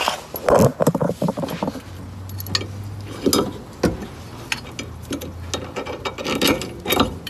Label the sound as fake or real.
real